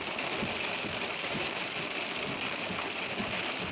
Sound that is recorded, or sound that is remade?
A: recorded